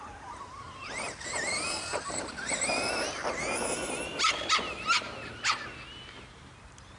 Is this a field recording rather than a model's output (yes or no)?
yes